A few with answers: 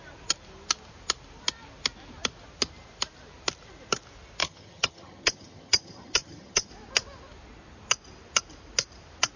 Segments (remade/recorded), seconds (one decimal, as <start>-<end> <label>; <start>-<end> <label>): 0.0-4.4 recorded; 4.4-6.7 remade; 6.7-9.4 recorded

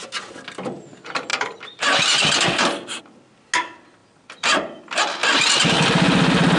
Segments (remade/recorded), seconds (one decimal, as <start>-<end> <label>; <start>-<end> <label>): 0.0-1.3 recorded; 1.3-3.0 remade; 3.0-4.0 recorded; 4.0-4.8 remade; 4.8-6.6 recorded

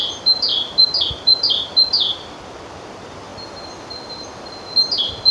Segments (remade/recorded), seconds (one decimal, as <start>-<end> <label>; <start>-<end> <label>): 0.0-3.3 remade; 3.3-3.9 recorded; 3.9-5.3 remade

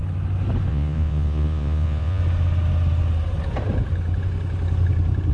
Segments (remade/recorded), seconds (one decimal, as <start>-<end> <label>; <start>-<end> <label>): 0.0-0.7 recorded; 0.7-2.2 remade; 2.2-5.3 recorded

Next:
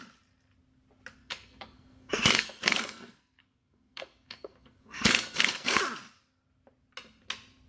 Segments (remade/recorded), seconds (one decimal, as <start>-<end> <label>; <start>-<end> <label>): 0.0-1.2 recorded; 1.2-5.8 remade; 5.8-7.7 recorded

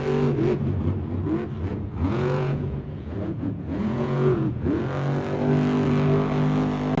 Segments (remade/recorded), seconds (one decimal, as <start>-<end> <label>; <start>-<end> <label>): 0.0-1.7 recorded; 1.7-4.8 remade; 4.8-7.0 recorded

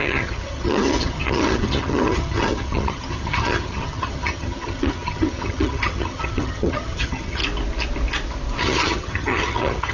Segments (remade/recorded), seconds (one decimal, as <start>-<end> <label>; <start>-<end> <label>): 0.0-7.4 remade; 7.4-8.6 recorded; 8.6-9.9 remade